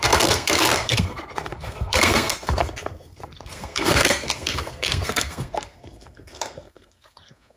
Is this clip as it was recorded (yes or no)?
no